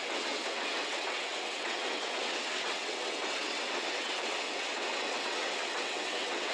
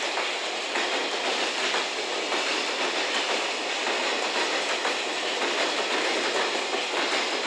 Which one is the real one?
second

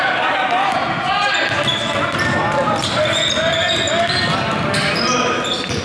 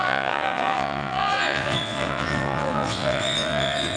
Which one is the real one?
first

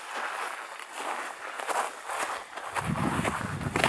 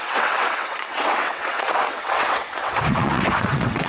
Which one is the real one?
first